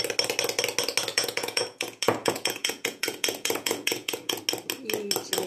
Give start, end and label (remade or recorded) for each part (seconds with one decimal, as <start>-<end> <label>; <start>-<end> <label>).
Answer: 0.0-1.1 recorded; 1.1-4.4 remade; 4.4-5.5 recorded